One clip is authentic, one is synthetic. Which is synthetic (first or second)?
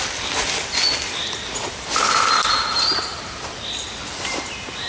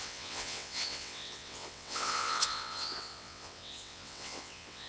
second